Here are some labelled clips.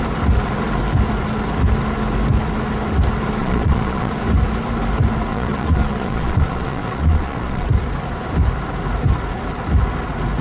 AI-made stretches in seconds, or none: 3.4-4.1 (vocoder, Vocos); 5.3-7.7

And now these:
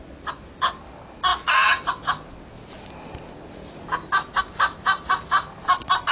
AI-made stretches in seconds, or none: none

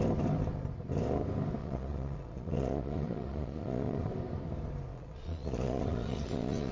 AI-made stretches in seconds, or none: 1.6-4.1 (vocoder, Vocos); 4.9-6.7